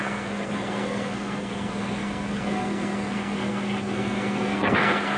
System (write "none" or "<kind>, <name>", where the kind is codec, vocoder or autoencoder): codec, SNAC